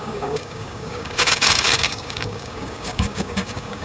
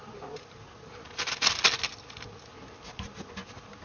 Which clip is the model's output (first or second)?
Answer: first